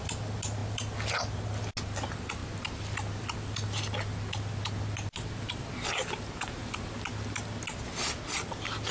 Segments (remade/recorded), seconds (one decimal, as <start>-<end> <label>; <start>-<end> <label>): 0.0-8.9 recorded